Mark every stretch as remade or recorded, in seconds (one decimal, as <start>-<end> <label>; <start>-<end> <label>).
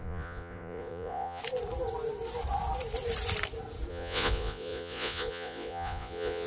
0.0-1.4 remade; 1.4-3.9 recorded; 3.9-6.5 remade